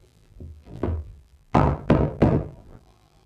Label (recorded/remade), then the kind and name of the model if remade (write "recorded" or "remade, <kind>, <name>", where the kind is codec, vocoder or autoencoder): remade, vocoder, BigVGAN v2